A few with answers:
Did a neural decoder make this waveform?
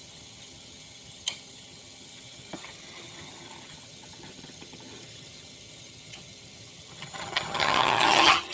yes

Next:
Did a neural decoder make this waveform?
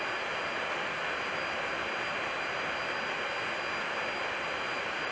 no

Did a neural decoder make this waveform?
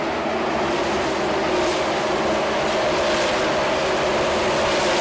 no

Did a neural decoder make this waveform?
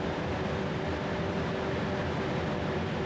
no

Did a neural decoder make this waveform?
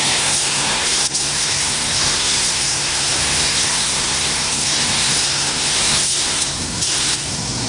yes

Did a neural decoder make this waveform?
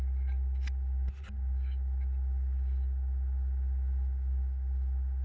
no